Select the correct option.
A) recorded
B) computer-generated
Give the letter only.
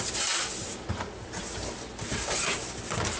A